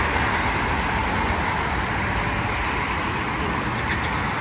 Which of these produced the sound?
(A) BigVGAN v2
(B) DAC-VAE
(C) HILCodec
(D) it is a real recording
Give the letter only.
D